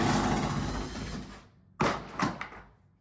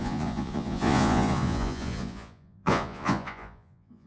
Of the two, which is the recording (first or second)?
first